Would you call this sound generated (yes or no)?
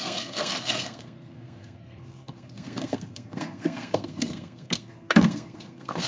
yes